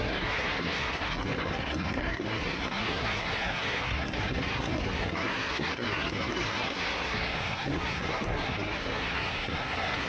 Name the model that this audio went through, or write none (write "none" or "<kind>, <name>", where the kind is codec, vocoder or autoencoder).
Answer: codec, SNAC